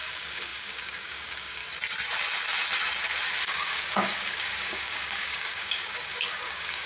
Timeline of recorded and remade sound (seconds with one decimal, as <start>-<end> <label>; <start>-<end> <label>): 0.0-1.6 remade; 1.6-3.4 recorded; 3.4-6.9 remade